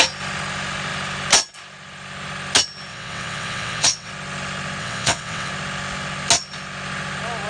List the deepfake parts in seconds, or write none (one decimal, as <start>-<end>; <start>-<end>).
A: 2.9-4.1; 4.8-5.5